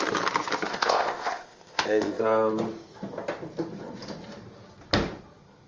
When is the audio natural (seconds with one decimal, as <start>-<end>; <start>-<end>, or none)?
0.0-0.7; 2.2-5.7